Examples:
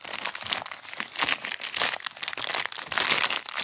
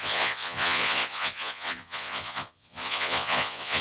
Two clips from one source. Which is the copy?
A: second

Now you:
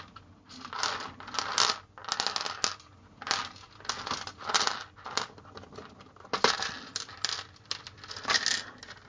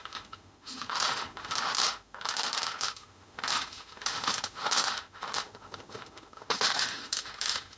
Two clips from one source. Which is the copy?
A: second